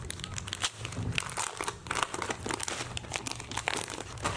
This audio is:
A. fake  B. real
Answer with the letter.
A